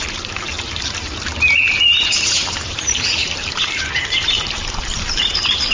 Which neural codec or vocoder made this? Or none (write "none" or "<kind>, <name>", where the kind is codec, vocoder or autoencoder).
vocoder, BigVGAN v2